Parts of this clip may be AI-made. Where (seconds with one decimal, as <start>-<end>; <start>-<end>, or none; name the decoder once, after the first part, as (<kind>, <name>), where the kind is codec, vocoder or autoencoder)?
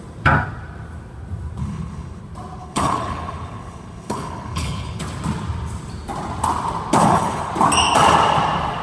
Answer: 1.6-2.2 (codec, HILCodec); 2.6-5.0; 7.0-7.5